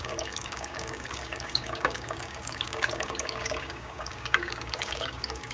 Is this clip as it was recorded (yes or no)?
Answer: no